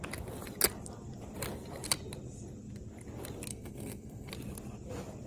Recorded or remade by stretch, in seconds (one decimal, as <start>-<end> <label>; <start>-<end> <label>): 0.0-3.5 recorded; 3.5-4.3 remade; 4.3-5.3 recorded